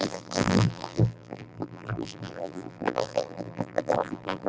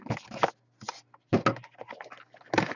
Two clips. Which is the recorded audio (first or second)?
second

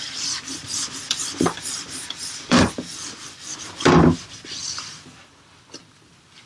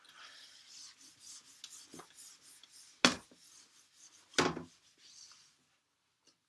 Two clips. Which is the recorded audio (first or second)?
second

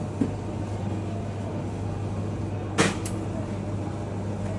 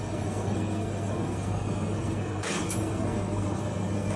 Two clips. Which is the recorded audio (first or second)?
first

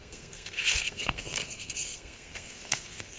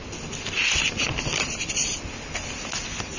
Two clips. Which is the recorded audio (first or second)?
second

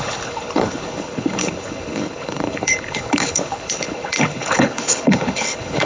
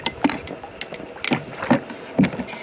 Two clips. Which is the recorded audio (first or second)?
second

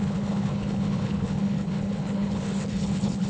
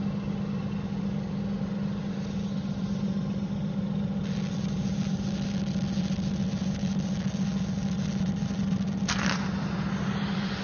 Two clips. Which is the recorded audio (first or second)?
second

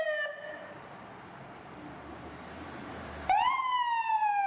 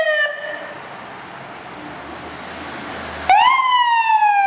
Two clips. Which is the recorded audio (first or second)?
second